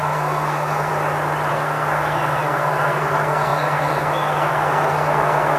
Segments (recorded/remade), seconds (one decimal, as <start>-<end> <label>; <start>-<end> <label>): 0.0-0.9 remade; 0.9-1.5 recorded; 1.5-5.6 remade